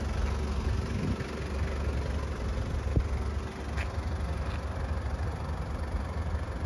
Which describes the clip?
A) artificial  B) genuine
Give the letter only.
B